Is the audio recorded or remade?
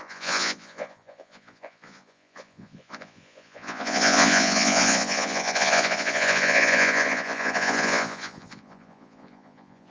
remade